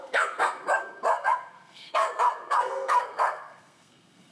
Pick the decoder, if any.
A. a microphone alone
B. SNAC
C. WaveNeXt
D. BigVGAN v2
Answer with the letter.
B